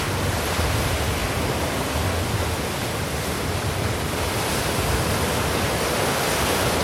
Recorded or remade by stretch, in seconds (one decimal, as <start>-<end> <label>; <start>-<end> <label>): 0.0-6.8 recorded